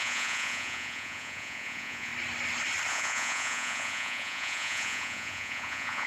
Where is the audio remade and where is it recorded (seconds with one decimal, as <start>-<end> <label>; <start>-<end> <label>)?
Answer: 0.0-2.1 remade; 2.1-2.9 recorded; 2.9-6.1 remade